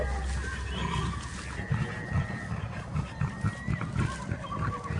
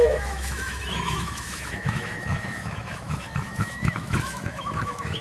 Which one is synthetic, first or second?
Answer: second